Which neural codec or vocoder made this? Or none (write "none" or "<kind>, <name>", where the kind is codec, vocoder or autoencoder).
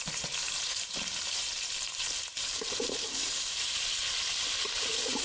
vocoder, BigVGAN v2